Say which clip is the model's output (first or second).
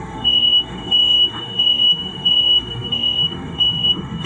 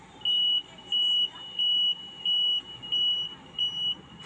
first